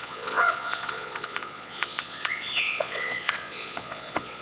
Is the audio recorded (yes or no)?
no